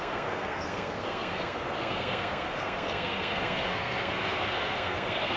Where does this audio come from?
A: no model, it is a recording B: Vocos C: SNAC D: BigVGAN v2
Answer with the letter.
C